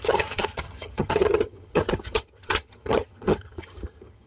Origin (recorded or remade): remade